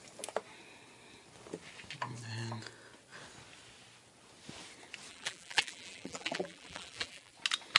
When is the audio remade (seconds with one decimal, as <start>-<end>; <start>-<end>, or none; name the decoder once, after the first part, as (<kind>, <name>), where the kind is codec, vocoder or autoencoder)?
5.1-7.3 (vocoder, BigVGAN v2)